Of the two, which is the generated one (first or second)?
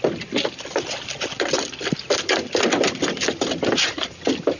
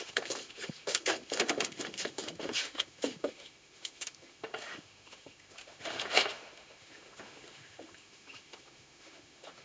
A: second